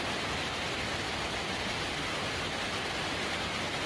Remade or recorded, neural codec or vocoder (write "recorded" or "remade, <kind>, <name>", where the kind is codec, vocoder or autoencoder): recorded